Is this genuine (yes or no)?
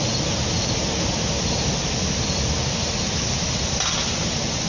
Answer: yes